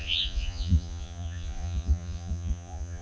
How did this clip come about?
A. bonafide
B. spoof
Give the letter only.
B